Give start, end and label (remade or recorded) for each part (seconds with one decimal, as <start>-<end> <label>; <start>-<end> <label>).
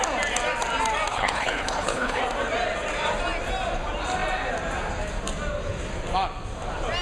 0.0-1.1 recorded; 1.1-2.2 remade; 2.2-7.0 recorded